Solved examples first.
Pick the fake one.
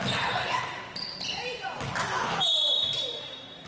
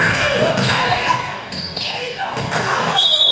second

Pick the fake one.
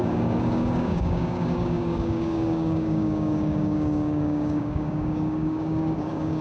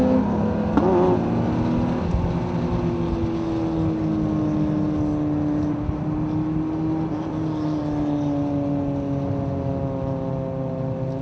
first